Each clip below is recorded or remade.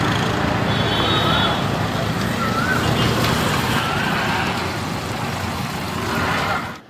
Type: recorded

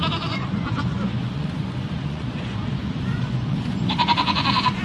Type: remade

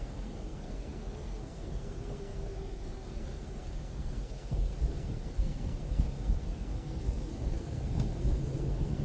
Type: remade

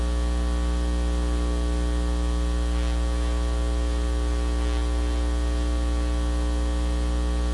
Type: recorded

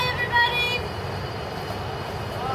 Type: recorded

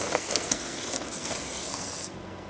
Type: remade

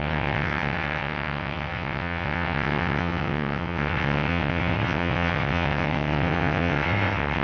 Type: remade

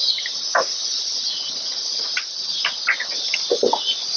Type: recorded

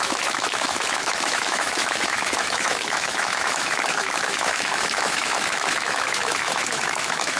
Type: remade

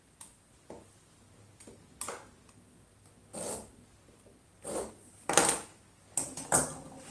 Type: recorded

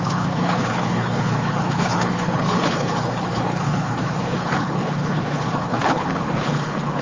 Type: remade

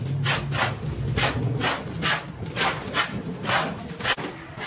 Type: recorded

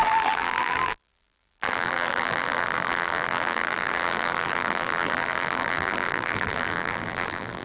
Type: remade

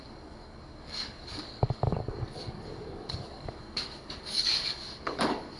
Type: remade